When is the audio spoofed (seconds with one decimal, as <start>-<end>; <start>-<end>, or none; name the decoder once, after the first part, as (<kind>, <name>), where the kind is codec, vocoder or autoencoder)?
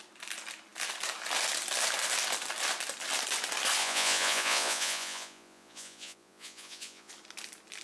3.8-7.1 (vocoder, Vocos)